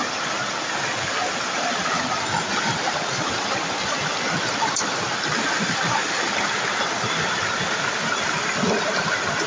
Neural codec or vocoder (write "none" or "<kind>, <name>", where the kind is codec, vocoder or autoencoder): none